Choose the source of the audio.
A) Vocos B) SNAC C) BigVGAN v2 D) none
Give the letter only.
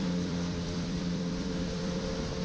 C